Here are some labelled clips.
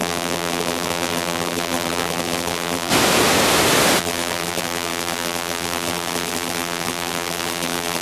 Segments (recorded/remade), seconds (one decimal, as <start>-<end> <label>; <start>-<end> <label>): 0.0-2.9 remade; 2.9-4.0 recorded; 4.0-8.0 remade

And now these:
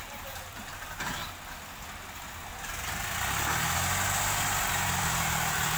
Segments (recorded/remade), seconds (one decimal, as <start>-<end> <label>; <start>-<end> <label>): 0.0-1.2 remade; 1.2-4.7 recorded; 4.7-5.8 remade

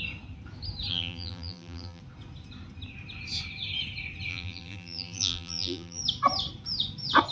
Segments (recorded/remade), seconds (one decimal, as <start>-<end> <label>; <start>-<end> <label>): 0.0-0.9 recorded; 0.9-2.0 remade; 2.0-4.3 recorded; 4.3-6.0 remade; 6.0-7.3 recorded

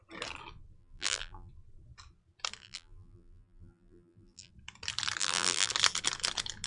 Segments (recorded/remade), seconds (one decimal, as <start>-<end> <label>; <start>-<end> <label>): 0.0-0.8 recorded; 0.8-1.5 remade; 1.5-2.6 recorded; 2.6-4.5 remade; 4.5-5.2 recorded; 5.2-5.7 remade; 5.7-6.7 recorded

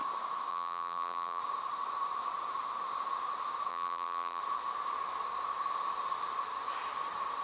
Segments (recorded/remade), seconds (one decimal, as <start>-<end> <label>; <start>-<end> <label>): 0.0-0.5 recorded; 0.5-1.4 remade; 1.4-3.7 recorded; 3.7-4.4 remade; 4.4-7.4 recorded

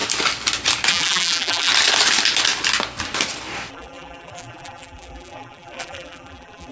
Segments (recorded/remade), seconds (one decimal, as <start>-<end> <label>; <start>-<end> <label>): 0.0-0.9 recorded; 0.9-1.7 remade; 1.7-3.7 recorded; 3.7-6.7 remade

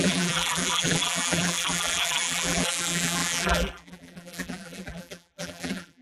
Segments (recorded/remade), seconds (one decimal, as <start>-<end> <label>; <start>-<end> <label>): 0.0-6.0 remade